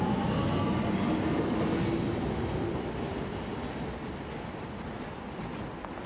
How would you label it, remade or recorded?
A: recorded